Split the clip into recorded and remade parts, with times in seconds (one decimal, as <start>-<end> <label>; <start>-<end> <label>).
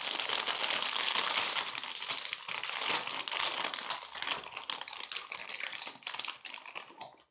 0.0-5.4 recorded; 5.4-6.2 remade; 6.2-7.3 recorded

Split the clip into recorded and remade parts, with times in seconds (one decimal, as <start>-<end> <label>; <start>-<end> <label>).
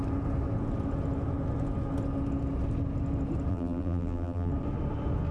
0.0-3.5 recorded; 3.5-4.5 remade; 4.5-5.3 recorded